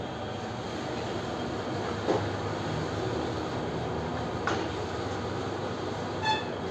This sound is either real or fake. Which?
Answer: real